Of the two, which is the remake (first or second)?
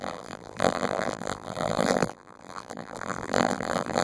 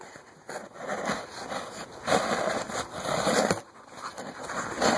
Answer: first